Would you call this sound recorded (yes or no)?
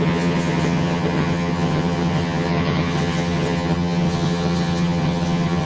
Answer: no